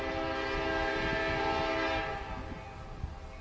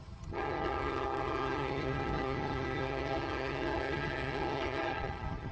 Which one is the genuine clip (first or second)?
first